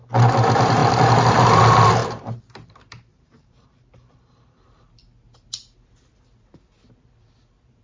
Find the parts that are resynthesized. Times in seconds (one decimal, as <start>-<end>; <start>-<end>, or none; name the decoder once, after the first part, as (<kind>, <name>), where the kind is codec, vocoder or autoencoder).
2.0-4.8 (vocoder, BigVGAN v2)